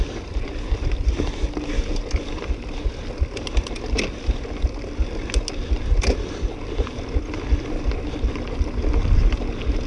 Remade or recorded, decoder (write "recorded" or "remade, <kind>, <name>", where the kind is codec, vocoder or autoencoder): recorded